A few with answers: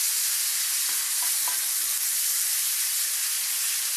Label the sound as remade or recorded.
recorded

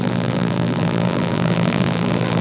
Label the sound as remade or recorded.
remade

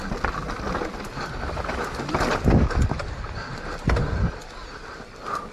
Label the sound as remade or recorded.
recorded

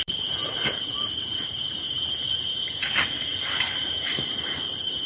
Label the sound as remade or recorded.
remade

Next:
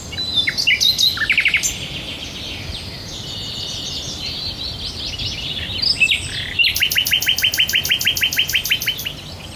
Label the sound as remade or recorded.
recorded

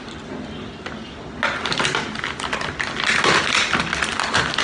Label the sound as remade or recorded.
recorded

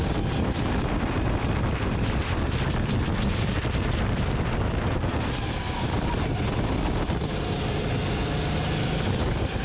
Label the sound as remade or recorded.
recorded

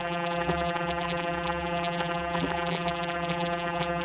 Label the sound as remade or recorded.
remade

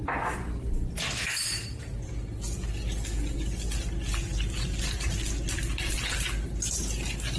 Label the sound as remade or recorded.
recorded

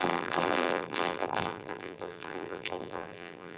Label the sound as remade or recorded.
remade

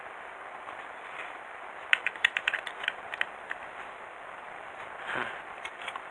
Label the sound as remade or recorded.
remade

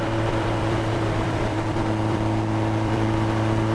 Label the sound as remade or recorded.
remade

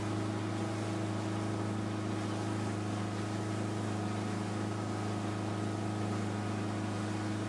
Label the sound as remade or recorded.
recorded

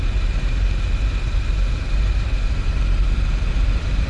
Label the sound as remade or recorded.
remade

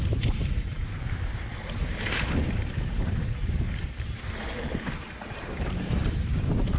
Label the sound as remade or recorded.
remade